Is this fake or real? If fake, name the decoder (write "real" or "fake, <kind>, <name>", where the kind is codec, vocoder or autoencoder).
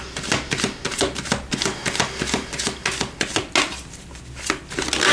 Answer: real